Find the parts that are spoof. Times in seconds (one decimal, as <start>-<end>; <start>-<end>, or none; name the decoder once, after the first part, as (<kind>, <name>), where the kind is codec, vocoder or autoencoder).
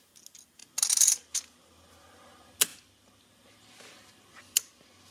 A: none